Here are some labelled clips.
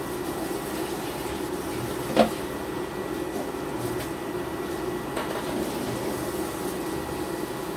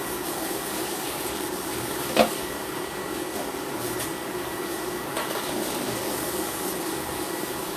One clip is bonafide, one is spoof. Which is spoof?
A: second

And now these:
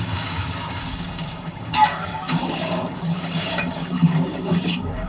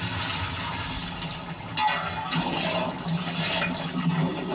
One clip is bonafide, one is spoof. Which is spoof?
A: first